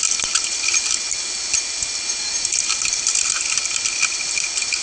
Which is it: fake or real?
real